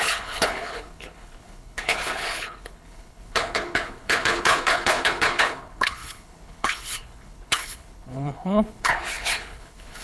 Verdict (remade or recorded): remade